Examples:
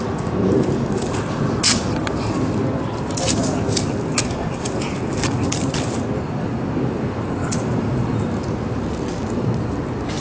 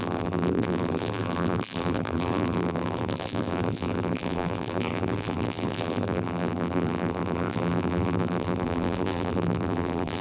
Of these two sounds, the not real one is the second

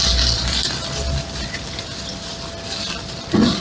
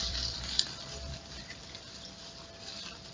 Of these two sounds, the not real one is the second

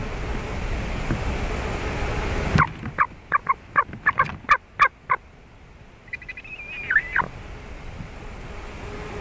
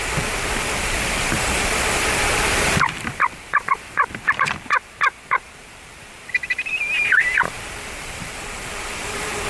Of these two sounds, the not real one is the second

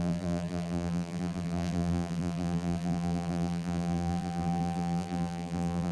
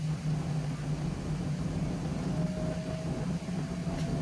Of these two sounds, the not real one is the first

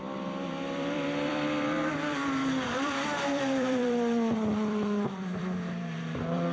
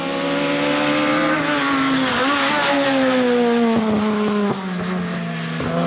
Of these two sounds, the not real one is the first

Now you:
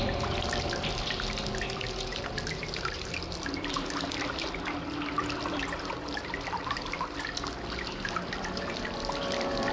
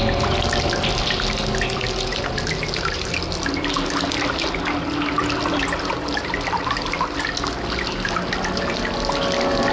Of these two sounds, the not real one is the first